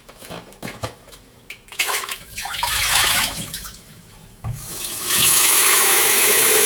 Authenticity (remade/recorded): remade